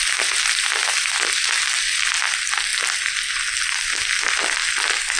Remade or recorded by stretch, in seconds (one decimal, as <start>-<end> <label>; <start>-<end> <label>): 0.0-5.2 recorded